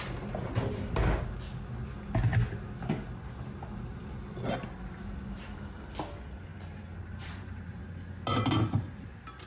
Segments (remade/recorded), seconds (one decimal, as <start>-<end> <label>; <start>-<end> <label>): 0.0-6.5 recorded; 6.5-7.8 remade; 7.8-9.5 recorded